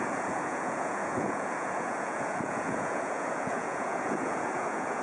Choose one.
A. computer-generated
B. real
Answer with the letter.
A